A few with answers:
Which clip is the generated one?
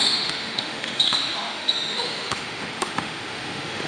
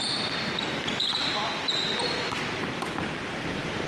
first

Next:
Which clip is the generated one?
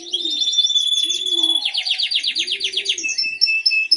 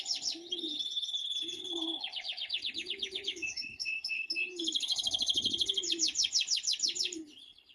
second